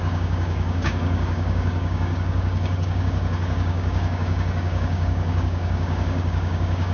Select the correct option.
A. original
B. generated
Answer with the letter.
B